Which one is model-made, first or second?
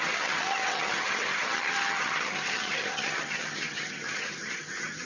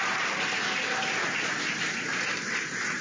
first